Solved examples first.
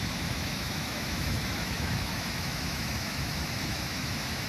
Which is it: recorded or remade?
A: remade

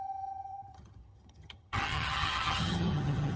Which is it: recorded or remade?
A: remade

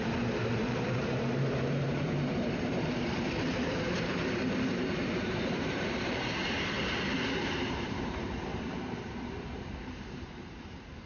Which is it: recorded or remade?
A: remade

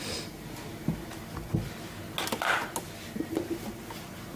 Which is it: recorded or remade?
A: recorded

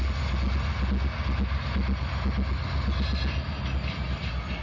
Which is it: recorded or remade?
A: recorded